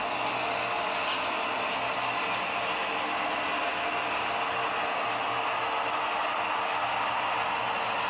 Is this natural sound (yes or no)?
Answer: yes